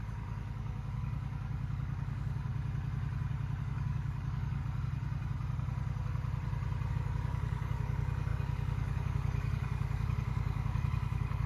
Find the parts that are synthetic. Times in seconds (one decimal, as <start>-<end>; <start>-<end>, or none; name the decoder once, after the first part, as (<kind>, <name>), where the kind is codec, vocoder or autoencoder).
0.0-2.5 (codec, DAC); 3.6-4.6; 6.9-11.5